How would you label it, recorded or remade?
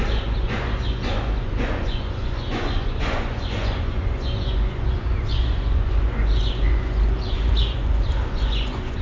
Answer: remade